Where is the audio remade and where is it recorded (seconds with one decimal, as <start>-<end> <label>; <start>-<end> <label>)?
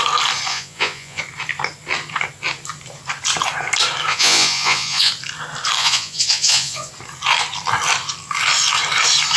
0.0-0.5 recorded; 0.5-1.2 remade; 1.2-4.1 recorded; 4.1-5.1 remade; 5.1-5.8 recorded; 5.8-6.9 remade; 6.9-9.4 recorded